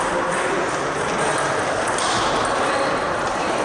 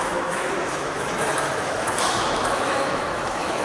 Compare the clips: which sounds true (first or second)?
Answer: first